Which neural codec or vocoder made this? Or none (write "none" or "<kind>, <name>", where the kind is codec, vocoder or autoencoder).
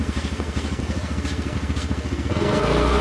codec, SNAC